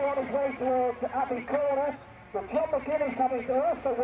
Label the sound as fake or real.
fake